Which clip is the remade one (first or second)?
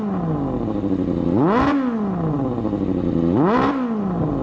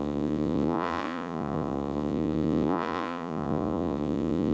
second